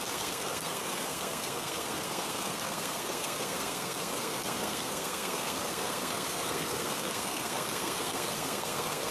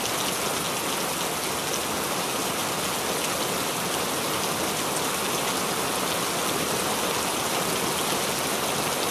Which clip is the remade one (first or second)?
first